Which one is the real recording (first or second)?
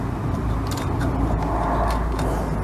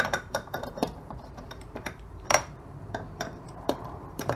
first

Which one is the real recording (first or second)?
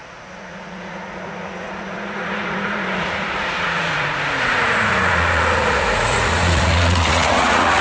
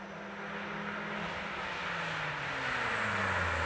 second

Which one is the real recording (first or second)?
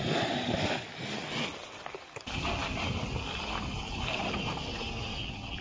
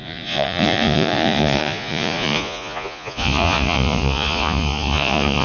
first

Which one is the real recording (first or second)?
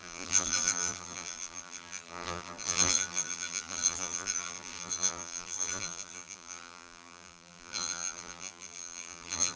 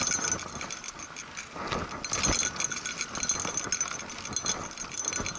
second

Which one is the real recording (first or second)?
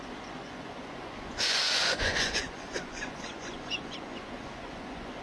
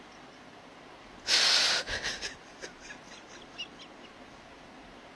second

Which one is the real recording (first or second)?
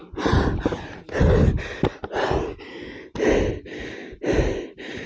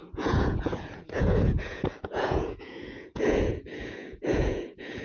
first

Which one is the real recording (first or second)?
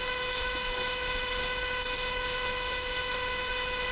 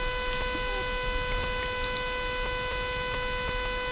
second